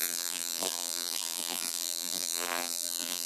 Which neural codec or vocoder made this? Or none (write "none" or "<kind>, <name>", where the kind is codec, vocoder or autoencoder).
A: vocoder, BigVGAN v2